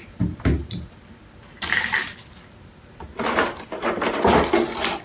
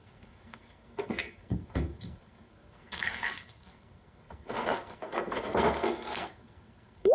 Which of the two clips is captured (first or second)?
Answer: first